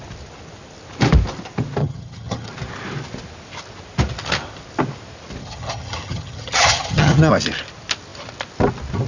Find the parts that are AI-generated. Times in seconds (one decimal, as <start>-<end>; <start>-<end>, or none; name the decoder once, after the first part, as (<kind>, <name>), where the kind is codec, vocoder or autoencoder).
1.8-2.5 (vocoder, HiFi-GAN); 5.4-7.3